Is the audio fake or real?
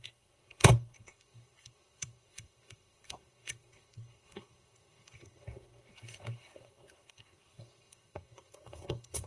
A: fake